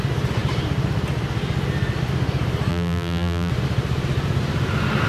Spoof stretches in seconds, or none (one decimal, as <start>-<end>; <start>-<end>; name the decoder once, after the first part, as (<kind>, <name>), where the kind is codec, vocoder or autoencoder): 2.7-3.5 (vocoder, BigVGAN v2)